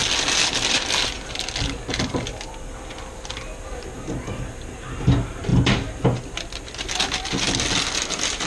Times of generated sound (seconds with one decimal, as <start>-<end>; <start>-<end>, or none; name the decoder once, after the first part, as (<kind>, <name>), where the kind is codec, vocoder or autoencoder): none